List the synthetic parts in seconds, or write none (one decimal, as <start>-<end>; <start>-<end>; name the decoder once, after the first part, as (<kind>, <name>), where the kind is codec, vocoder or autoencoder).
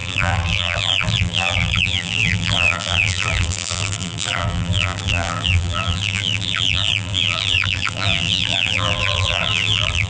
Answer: 0.0-10.1 (vocoder, BigVGAN v2)